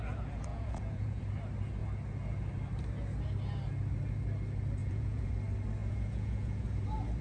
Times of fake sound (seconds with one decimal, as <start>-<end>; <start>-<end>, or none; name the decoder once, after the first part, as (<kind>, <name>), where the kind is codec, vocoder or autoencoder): 0.5-1.2 (vocoder, Vocos); 4.8-5.3; 5.8-6.8